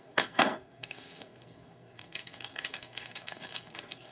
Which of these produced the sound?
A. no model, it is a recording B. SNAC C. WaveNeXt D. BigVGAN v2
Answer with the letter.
B